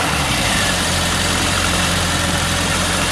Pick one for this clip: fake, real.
fake